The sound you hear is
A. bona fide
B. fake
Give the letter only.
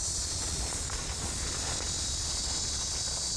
B